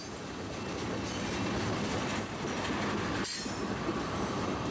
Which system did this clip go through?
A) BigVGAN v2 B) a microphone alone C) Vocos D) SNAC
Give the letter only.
B